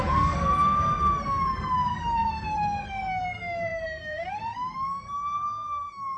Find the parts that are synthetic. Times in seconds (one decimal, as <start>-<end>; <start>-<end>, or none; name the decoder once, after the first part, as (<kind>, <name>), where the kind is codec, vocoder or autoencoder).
0.0-6.2 (codec, SNAC)